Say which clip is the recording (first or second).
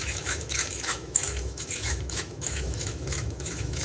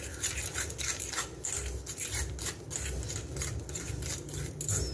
second